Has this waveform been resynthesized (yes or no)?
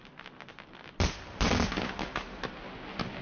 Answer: no